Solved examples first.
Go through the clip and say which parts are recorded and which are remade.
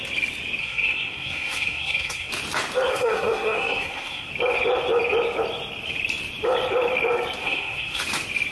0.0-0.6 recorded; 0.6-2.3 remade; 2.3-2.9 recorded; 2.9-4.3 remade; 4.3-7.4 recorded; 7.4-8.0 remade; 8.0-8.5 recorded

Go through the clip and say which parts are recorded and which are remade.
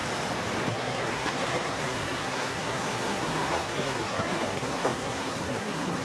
0.0-0.7 recorded; 0.7-6.0 remade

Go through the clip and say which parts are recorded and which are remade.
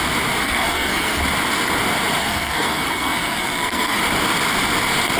0.0-0.4 recorded; 0.4-1.2 remade; 1.2-2.2 recorded; 2.2-4.0 remade; 4.0-5.2 recorded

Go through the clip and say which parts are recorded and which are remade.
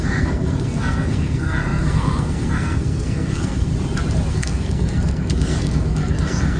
0.0-3.7 remade; 3.7-4.3 recorded; 4.3-6.6 remade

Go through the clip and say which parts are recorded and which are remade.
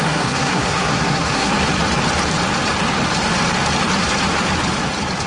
0.0-1.5 remade; 1.5-5.3 recorded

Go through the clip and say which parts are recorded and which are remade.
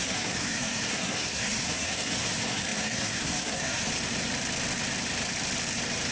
0.0-3.9 remade; 3.9-6.1 recorded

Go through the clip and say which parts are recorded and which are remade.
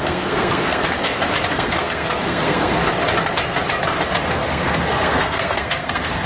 0.0-0.8 remade; 0.8-1.5 recorded; 1.5-2.8 remade; 2.8-4.3 recorded; 4.3-6.3 remade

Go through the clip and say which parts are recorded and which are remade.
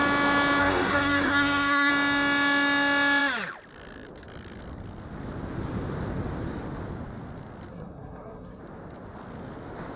0.0-0.6 recorded; 0.6-1.9 remade; 1.9-7.7 recorded; 7.7-8.6 remade; 8.6-10.0 recorded